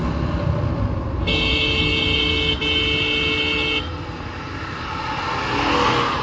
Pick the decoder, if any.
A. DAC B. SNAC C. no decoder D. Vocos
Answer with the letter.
C